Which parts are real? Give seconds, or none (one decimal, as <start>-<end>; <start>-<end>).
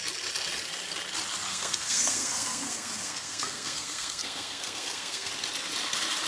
0.0-1.5; 5.3-6.3